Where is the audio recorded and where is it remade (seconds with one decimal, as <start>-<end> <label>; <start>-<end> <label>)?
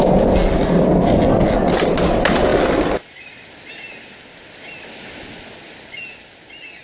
0.0-6.8 recorded